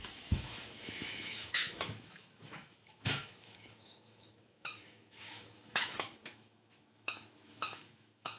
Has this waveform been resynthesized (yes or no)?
yes